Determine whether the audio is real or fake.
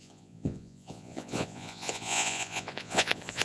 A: fake